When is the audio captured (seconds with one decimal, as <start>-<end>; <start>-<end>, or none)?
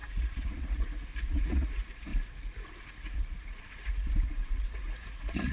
2.1-3.0